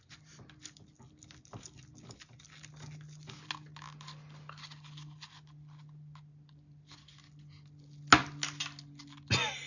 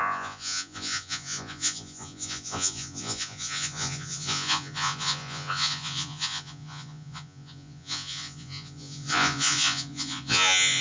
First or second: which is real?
first